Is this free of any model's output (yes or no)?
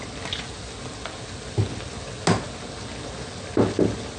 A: yes